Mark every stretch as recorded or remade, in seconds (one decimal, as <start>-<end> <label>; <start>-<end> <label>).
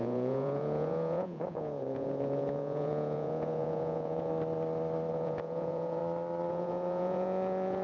0.0-4.3 remade; 4.3-5.1 recorded; 5.1-6.0 remade; 6.0-6.5 recorded; 6.5-7.8 remade